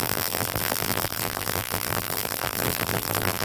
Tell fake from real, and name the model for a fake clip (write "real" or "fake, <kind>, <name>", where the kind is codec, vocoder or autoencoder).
fake, vocoder, BigVGAN v2